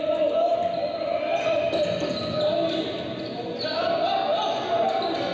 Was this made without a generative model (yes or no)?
yes